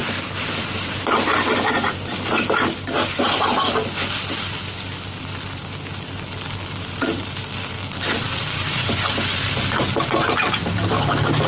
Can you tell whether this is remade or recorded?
remade